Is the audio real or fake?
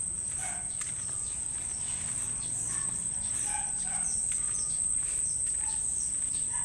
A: real